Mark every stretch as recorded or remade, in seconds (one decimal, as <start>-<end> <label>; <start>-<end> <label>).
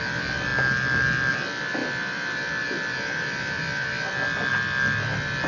0.0-5.5 recorded